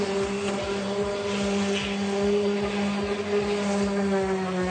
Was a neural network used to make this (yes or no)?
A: no